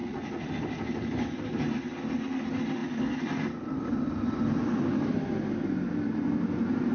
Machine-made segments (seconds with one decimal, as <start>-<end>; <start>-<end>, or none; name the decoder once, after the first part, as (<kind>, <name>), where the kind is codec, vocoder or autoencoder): 0.0-0.5 (vocoder, Vocos)